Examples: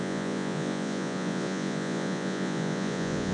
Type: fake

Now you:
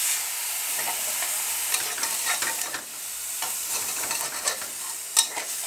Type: real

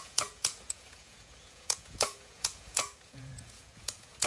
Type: fake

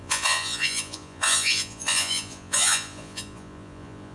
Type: fake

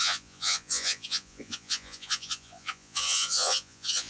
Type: fake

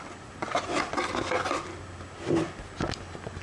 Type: real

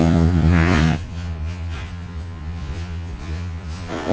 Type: fake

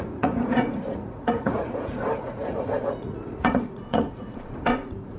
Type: fake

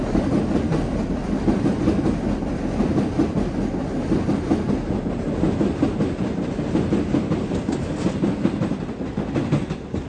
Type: real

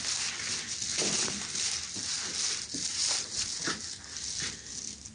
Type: real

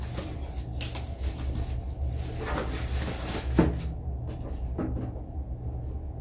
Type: real